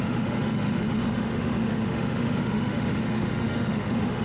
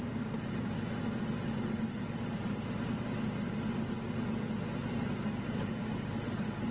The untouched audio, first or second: second